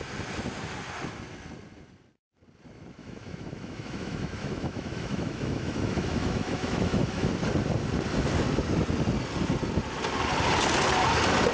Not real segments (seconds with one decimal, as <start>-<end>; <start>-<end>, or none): 3.0-7.3